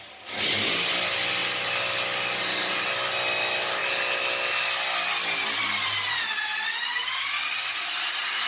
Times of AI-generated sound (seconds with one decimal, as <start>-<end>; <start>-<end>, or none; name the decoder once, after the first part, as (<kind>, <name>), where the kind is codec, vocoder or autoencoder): none